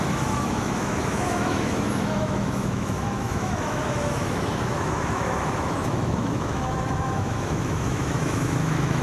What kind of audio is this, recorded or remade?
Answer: remade